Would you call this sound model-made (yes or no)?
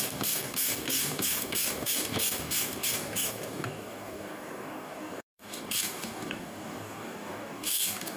yes